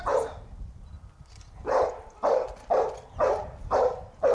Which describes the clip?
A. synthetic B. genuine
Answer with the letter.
B